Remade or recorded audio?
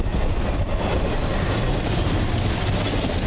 recorded